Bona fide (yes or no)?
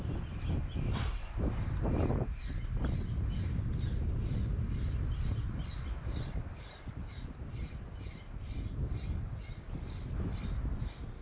yes